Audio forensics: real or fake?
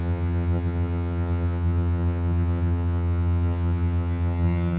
fake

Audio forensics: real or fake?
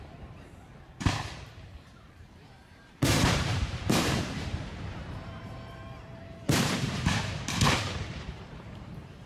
fake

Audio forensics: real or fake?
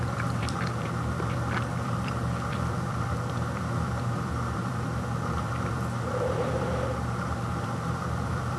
fake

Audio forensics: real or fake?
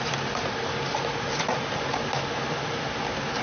real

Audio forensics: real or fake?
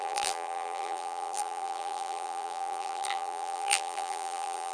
fake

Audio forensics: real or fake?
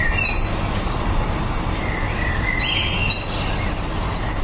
real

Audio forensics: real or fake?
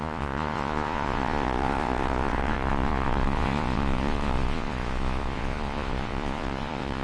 fake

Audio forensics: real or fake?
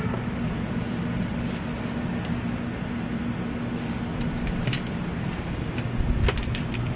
real